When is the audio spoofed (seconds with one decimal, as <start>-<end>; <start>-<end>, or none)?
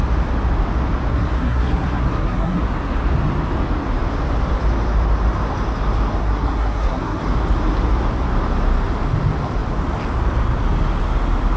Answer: 1.1-2.6; 6.2-7.2